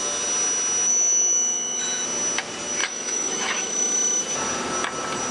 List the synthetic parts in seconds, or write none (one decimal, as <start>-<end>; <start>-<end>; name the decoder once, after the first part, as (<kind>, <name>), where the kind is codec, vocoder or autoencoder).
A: 0.9-1.8 (autoencoder, DAC-VAE); 2.8-4.2